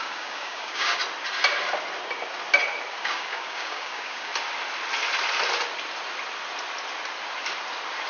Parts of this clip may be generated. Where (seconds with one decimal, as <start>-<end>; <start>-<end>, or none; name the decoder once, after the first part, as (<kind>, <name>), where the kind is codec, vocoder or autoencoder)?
0.0-1.0 (codec, DAC); 2.9-4.3